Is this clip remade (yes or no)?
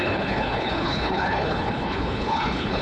yes